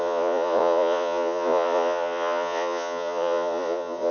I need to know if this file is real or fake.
fake